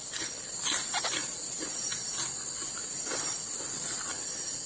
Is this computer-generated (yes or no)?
no